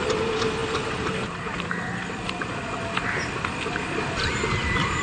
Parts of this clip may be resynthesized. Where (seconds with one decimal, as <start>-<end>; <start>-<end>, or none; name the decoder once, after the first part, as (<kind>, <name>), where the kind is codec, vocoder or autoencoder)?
none